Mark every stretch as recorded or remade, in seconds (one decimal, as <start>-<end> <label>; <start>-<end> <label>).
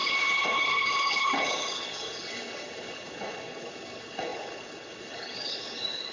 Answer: 0.0-6.1 remade